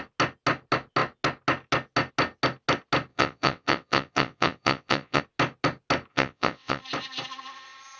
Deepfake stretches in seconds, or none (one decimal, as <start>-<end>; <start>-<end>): 3.1-5.2; 6.1-6.8